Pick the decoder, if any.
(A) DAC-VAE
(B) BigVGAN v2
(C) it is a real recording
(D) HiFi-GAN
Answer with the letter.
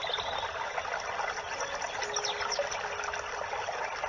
C